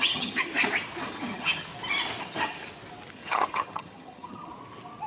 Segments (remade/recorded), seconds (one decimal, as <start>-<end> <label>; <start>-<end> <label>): 0.0-0.5 remade; 0.5-1.0 recorded; 1.0-1.7 remade; 1.7-2.2 recorded; 2.2-2.6 remade; 2.6-3.1 recorded; 3.1-4.5 remade; 4.5-5.1 recorded